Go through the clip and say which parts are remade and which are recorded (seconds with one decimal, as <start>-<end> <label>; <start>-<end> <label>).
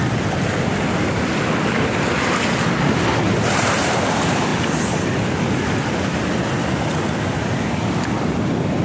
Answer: 0.0-8.8 recorded